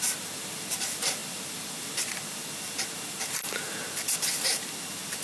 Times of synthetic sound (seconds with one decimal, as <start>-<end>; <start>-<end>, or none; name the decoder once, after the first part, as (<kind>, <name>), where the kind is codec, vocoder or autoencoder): none